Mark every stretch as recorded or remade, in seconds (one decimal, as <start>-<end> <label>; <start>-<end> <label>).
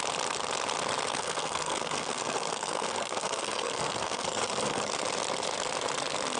0.0-1.1 recorded; 1.1-4.9 remade; 4.9-6.4 recorded